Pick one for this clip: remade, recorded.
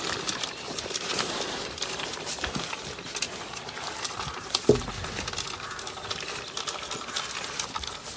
recorded